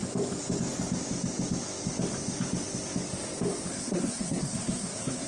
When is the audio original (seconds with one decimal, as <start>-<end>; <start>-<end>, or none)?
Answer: 0.0-3.7